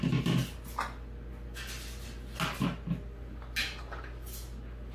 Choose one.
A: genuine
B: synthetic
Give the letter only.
A